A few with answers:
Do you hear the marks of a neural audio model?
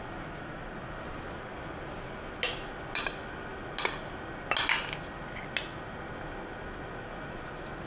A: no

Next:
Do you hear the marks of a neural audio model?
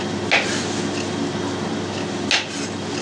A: no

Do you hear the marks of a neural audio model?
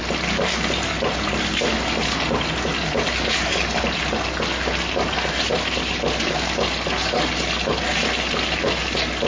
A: no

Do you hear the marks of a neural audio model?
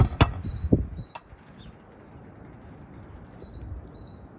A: no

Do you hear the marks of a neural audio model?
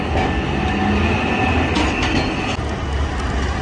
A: no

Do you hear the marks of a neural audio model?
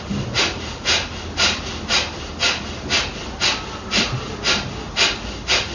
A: no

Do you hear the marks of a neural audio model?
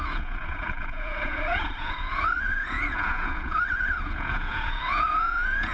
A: yes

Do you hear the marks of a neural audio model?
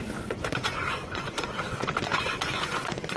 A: yes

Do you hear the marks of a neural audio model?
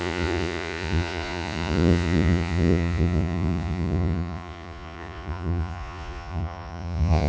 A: yes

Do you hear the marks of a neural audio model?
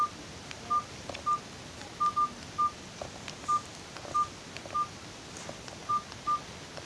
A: no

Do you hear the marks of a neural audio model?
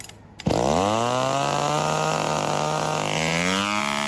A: no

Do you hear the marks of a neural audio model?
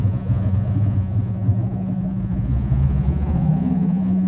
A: yes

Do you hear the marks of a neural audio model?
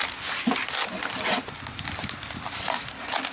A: no